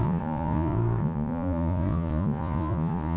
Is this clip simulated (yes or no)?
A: yes